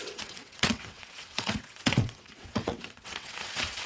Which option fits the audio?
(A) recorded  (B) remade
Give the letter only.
B